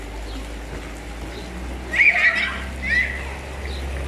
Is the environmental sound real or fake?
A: real